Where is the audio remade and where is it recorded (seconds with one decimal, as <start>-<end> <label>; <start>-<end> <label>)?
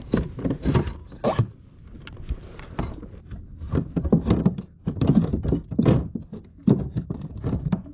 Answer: 0.0-7.9 recorded